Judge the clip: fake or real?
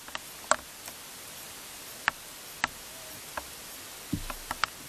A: real